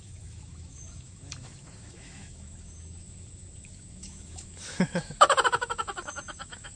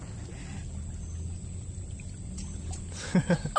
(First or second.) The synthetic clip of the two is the first